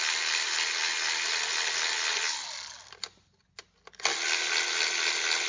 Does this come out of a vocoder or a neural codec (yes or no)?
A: no